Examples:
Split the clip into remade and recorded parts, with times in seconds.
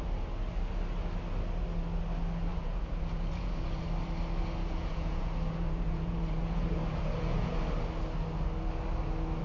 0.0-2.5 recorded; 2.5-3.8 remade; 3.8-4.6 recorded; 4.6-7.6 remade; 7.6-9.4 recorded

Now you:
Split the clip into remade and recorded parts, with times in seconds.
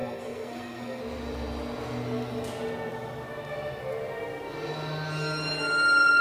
0.0-1.0 remade; 1.0-6.2 recorded